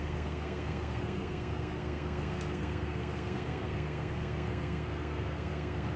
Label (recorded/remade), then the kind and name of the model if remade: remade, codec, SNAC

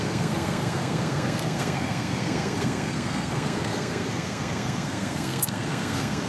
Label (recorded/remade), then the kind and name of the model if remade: remade, codec, SNAC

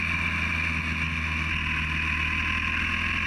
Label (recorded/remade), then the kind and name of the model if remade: recorded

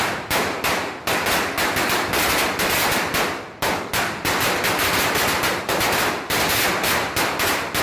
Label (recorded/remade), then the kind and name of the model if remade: recorded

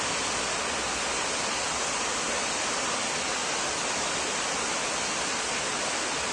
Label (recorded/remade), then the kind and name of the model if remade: recorded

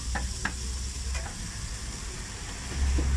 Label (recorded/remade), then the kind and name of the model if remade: recorded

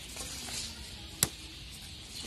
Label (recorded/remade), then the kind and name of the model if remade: recorded